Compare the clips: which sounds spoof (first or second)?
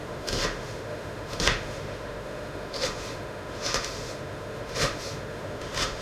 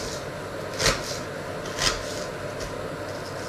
first